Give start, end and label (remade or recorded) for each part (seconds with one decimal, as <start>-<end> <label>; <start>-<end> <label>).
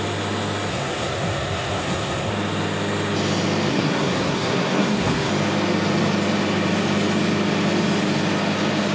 0.0-0.7 recorded; 0.7-2.3 remade; 2.3-3.7 recorded; 3.7-5.3 remade; 5.3-8.9 recorded